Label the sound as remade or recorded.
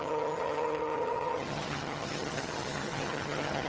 remade